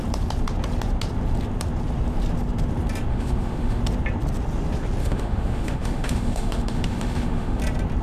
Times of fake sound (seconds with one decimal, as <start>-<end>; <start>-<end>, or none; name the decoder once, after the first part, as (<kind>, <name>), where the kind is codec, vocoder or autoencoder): 3.1-3.8 (autoencoder, DAC-VAE); 5.0-7.6

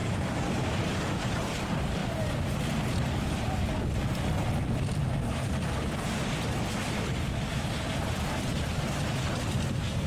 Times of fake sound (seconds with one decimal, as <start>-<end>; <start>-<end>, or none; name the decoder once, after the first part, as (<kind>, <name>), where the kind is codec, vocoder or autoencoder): 0.0-0.8 (vocoder, BigVGAN v2)

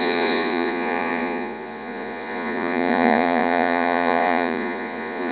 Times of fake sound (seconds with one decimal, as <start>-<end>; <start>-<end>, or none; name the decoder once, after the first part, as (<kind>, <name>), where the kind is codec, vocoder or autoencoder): 0.0-5.3 (vocoder, Vocos)

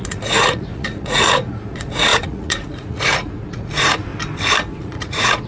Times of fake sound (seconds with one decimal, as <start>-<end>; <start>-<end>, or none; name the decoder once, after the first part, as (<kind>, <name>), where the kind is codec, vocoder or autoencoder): 0.0-4.1 (vocoder, Vocos); 4.8-5.5